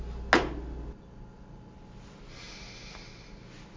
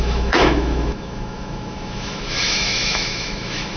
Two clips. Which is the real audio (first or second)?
first